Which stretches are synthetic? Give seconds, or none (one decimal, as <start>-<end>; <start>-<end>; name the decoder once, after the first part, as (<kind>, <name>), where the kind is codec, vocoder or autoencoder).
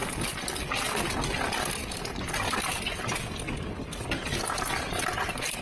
none